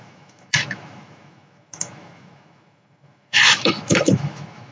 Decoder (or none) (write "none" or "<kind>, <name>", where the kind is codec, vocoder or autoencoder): autoencoder, DAC-VAE